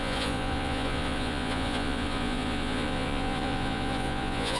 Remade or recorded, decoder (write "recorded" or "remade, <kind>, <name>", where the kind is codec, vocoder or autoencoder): remade, vocoder, Vocos